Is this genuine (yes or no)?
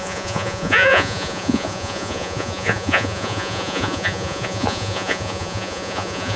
no